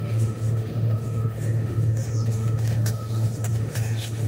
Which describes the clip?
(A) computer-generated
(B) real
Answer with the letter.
A